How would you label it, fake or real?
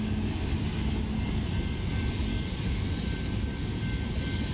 real